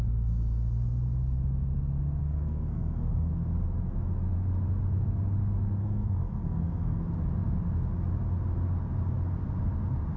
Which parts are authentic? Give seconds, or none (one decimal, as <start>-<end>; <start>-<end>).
0.0-2.2; 3.3-5.8; 7.0-10.2